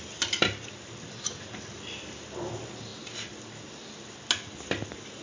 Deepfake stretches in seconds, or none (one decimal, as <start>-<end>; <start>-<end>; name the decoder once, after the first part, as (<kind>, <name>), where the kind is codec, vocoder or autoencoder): none